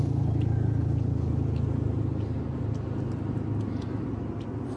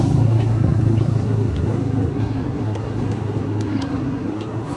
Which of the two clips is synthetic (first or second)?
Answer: second